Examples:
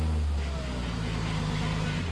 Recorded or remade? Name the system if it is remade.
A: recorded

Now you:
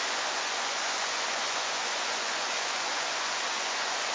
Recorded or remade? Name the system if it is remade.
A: remade, vocoder, Vocos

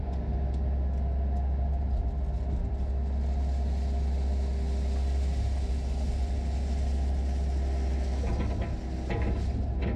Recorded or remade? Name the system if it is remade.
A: recorded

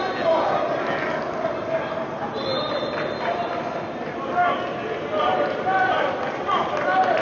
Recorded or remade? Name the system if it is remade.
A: recorded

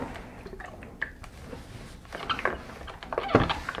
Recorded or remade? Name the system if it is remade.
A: recorded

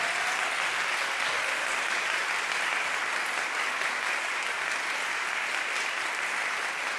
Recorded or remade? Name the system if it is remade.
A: recorded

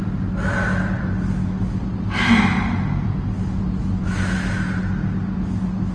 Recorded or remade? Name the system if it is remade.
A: recorded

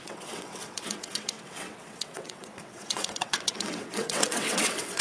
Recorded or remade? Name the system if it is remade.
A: remade, vocoder, WaveNeXt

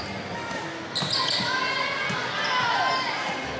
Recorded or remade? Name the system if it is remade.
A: recorded